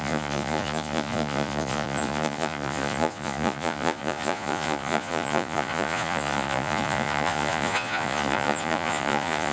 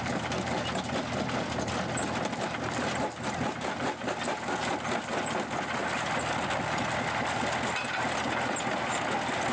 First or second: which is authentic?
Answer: second